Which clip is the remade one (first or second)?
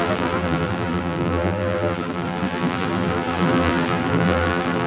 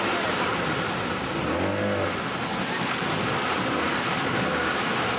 first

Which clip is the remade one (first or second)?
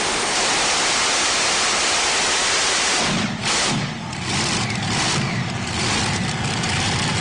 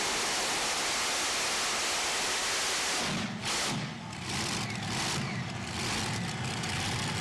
first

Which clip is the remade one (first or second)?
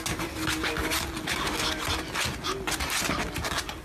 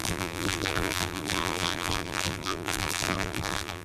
second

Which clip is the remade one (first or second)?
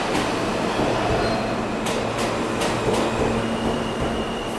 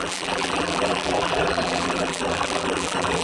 second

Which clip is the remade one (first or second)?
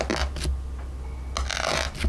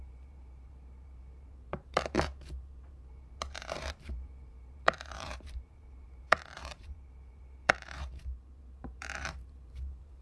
second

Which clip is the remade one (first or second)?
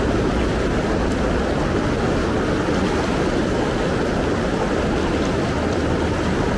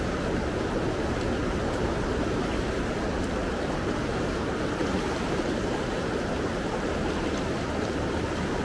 second